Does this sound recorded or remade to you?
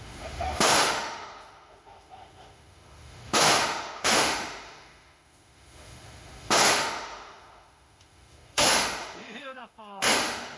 remade